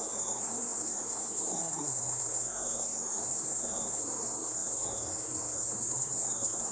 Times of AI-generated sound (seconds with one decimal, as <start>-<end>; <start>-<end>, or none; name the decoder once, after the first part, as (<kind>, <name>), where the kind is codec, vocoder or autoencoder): 0.0-6.7 (codec, SNAC)